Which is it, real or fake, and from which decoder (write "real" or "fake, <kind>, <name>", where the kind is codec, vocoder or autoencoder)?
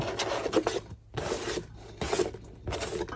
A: real